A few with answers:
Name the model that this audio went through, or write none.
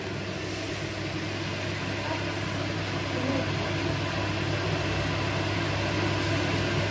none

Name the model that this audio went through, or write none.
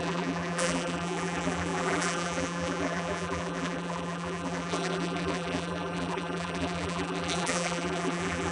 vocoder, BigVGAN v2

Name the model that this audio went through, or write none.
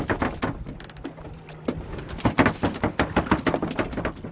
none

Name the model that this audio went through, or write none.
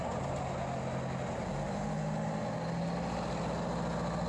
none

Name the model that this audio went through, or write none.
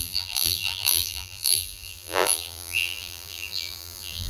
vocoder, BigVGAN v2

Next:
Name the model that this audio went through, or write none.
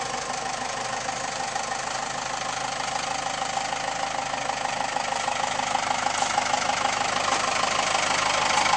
none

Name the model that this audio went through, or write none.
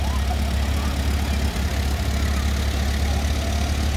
none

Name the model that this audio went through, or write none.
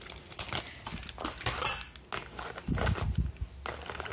none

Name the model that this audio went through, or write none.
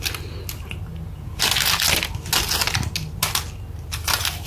none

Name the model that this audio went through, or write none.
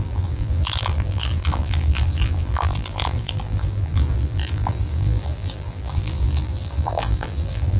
vocoder, BigVGAN v2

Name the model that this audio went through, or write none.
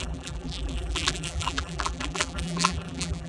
vocoder, BigVGAN v2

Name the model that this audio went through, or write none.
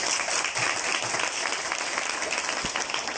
none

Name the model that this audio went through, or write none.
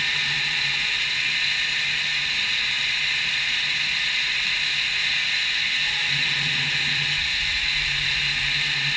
none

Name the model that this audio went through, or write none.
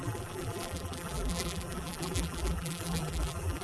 vocoder, BigVGAN v2